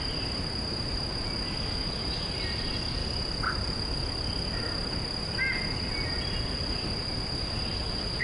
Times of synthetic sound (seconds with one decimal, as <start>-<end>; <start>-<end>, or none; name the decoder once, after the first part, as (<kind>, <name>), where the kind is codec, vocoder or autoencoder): none